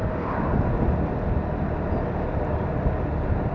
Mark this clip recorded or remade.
recorded